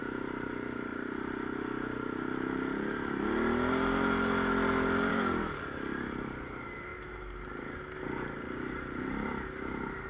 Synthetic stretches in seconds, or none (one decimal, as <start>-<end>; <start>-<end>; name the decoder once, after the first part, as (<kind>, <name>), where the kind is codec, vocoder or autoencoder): 5.1-6.4 (codec, DAC)